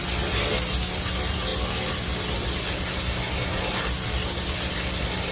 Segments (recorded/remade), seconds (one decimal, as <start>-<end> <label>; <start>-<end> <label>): 0.0-5.3 recorded

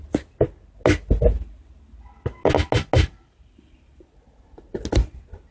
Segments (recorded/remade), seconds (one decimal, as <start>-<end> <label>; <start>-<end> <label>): 0.0-5.5 recorded

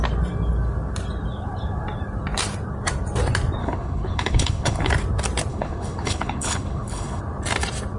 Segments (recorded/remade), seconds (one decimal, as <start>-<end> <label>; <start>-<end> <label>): 0.0-3.6 recorded; 3.6-4.9 remade; 4.9-5.5 recorded; 5.5-7.2 remade; 7.2-8.0 recorded

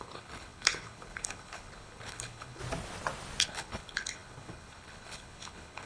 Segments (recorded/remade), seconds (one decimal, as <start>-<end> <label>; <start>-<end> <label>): 0.0-2.6 remade; 2.6-3.4 recorded; 3.4-5.9 remade

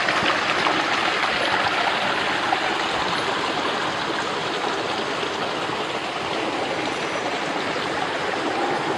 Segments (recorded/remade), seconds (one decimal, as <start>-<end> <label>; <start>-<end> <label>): 0.0-9.0 recorded